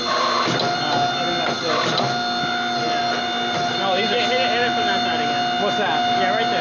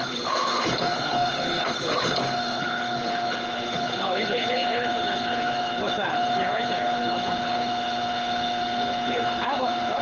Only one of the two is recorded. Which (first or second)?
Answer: first